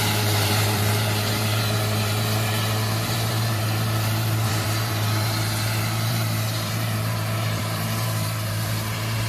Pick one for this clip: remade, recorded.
remade